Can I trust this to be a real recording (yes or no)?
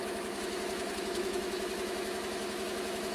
no